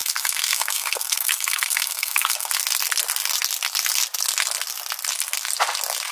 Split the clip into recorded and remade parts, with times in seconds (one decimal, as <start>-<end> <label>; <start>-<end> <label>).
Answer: 0.0-2.5 remade; 2.5-6.1 recorded